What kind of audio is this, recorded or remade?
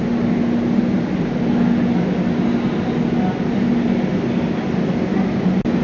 recorded